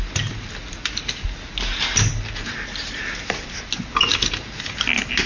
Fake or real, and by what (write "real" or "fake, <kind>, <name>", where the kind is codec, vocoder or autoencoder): real